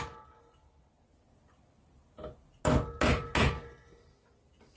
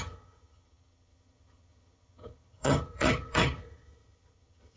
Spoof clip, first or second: second